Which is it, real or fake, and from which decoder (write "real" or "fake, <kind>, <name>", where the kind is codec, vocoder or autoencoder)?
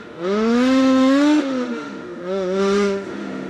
fake, autoencoder, DAC-VAE